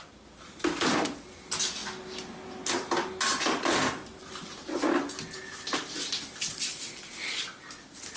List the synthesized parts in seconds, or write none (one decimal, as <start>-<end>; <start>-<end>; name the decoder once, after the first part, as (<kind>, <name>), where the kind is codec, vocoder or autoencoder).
none